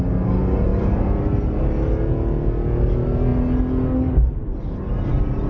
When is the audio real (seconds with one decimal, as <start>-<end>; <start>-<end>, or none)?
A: 0.0-5.5